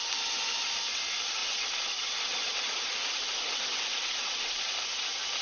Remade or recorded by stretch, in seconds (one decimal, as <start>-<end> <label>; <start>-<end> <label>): 0.0-1.4 recorded; 1.4-4.6 remade; 4.6-5.4 recorded